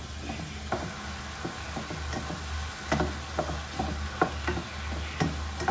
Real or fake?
real